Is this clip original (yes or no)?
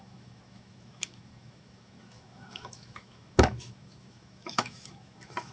no